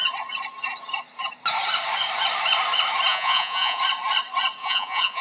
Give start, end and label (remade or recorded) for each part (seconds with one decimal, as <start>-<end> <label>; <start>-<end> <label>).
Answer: 0.0-3.1 recorded; 3.1-3.8 remade; 3.8-4.6 recorded; 4.6-5.2 remade